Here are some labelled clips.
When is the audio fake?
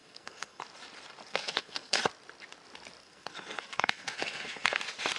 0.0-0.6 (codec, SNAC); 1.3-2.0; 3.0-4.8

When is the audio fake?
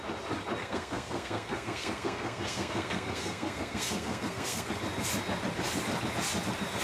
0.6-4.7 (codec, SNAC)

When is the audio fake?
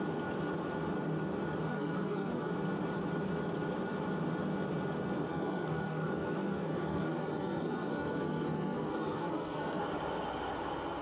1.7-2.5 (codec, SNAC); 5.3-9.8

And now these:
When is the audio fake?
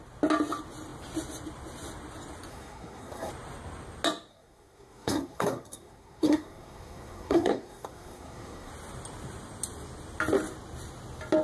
2.5-3.3 (codec, SNAC); 4.3-8.7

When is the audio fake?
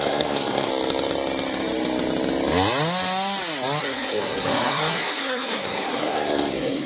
0.0-0.7 (codec, SNAC); 3.8-6.9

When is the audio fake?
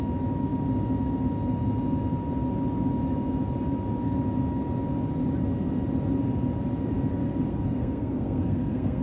7.5-9.0 (codec, SNAC)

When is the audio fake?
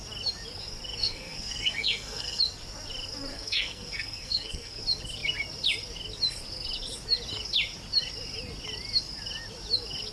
1.0-2.4 (codec, SNAC); 3.3-4.8